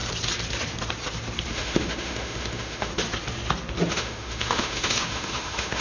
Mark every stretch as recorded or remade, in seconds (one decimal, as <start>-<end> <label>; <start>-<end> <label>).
0.0-1.5 recorded; 1.5-2.9 remade; 2.9-3.9 recorded; 3.9-5.8 remade